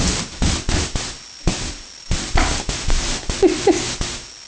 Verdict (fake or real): real